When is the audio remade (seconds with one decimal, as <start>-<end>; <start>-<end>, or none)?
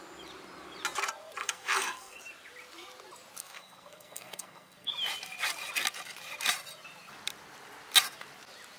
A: 1.4-2.2; 3.4-4.9